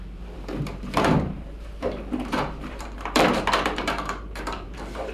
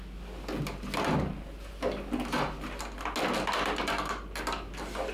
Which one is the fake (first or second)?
first